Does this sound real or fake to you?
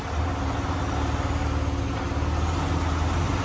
real